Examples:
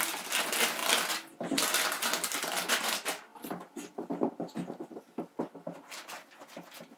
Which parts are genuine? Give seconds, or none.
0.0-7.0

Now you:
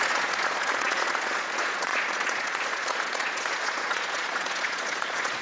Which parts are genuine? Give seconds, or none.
none

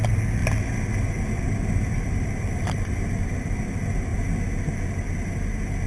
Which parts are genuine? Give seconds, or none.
0.0-0.4; 1.0-1.9; 3.6-5.9